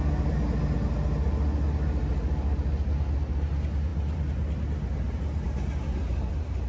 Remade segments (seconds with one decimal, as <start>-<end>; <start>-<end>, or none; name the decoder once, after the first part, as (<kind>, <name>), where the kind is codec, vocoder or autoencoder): none